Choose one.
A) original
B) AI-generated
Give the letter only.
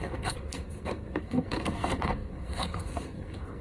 B